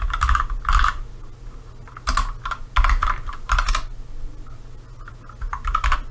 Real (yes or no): yes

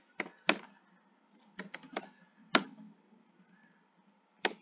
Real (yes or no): yes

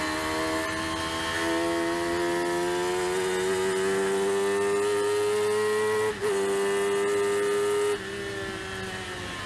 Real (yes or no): yes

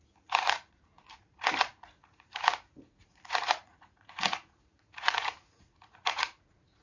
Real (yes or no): no